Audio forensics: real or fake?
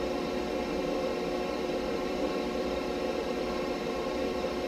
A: fake